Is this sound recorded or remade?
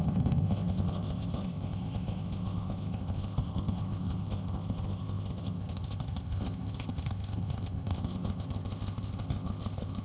remade